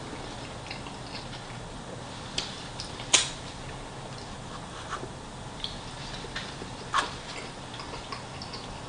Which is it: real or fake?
real